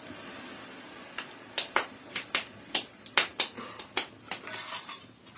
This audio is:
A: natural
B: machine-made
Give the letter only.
A